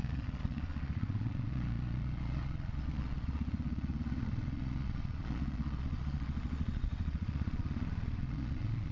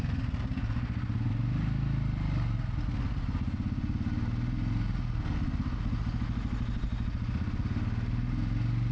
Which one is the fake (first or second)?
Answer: first